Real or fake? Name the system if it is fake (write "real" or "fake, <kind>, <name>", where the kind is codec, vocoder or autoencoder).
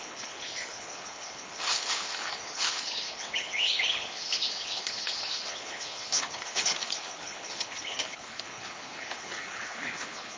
fake, codec, HILCodec